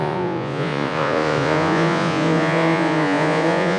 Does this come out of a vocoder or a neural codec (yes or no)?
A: yes